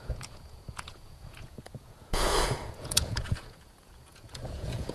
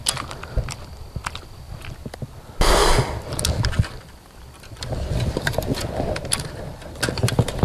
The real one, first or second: second